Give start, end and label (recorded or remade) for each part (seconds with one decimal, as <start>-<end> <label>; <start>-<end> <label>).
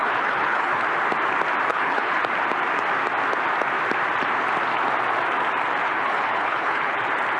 0.0-0.8 remade; 0.8-1.7 recorded; 1.7-2.2 remade; 2.2-5.8 recorded; 5.8-7.0 remade; 7.0-7.4 recorded